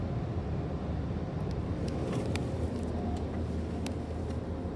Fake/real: real